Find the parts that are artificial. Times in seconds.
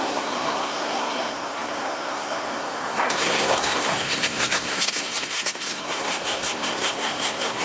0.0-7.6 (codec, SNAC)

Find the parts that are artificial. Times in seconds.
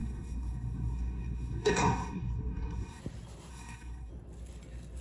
0.0-3.0 (codec, SNAC); 3.5-4.1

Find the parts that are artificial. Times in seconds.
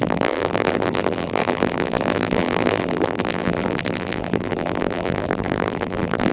0.0-6.3 (vocoder, BigVGAN v2)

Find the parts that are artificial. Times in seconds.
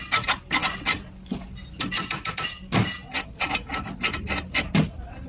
none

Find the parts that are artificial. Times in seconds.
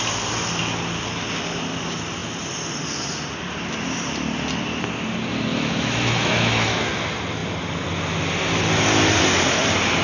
5.5-6.9 (autoencoder, DAC-VAE)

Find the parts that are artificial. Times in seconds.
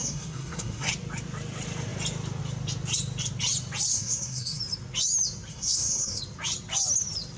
0.0-0.9 (codec, SNAC); 3.9-4.6; 5.5-6.2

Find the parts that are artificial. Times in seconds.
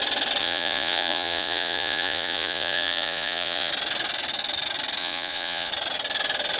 0.4-3.7 (vocoder, Vocos); 5.0-5.7